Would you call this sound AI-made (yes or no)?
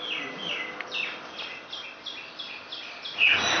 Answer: no